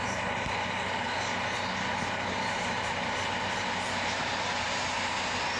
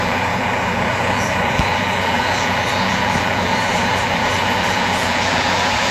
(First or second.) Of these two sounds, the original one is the first